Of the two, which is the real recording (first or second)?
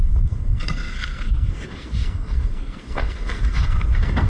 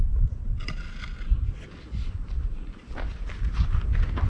second